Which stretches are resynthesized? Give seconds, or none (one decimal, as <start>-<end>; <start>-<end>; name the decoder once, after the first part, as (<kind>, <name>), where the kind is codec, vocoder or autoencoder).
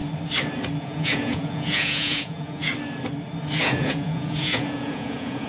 0.8-2.7 (vocoder, Vocos); 3.6-5.5